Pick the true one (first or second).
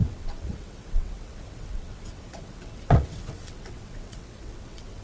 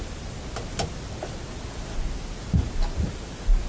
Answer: second